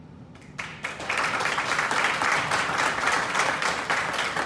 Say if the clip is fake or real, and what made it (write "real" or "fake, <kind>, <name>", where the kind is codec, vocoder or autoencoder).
fake, vocoder, BigVGAN v2